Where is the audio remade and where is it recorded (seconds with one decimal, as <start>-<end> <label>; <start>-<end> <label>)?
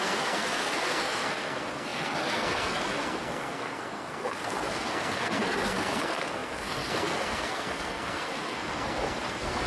0.0-9.7 remade